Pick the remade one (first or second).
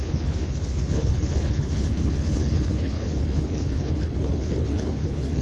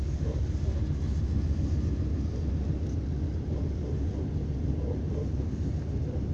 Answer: first